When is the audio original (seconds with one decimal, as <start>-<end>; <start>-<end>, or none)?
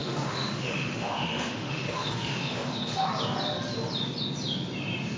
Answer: 3.1-5.2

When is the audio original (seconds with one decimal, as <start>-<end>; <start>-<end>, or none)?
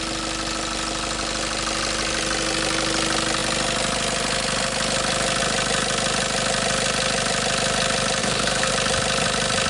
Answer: 0.0-8.2; 8.7-9.7